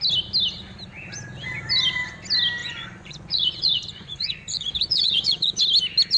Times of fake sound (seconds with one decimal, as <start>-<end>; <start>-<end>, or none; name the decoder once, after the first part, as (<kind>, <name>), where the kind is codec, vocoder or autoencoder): 2.6-5.6 (vocoder, Vocos)